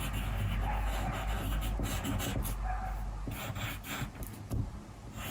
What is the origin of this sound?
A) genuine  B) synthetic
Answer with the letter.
A